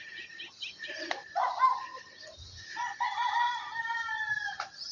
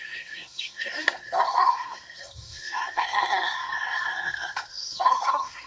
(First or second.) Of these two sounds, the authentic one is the first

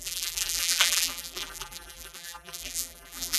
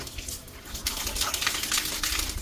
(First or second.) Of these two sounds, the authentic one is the second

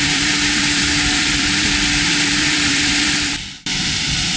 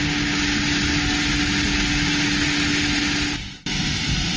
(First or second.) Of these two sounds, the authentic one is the second